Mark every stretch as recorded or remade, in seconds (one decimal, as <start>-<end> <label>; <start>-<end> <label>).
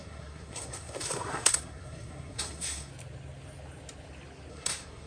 0.0-2.9 remade; 2.9-4.5 recorded; 4.5-5.1 remade